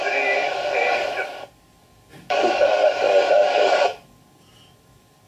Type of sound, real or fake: fake